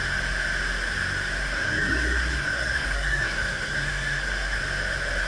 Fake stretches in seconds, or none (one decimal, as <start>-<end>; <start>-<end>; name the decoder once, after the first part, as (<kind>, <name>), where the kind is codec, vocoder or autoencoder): 1.4-4.6 (codec, SNAC)